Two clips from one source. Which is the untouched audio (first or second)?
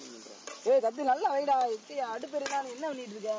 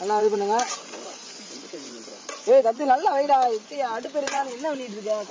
first